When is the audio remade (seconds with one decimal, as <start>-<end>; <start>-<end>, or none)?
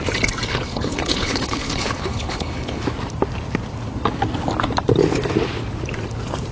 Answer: 0.5-2.8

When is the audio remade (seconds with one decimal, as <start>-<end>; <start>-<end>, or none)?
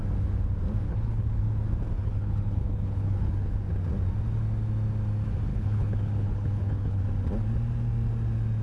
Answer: 0.8-1.4; 2.0-3.6; 5.5-7.0